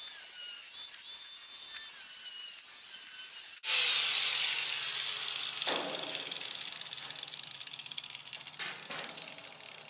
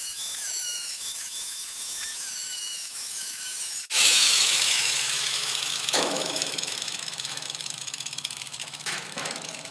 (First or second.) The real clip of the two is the first